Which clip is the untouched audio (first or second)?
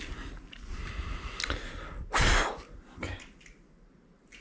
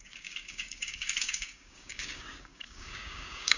first